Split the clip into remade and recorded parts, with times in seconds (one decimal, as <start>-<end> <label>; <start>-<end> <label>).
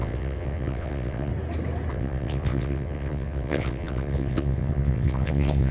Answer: 0.0-1.3 remade; 1.3-1.9 recorded; 1.9-5.7 remade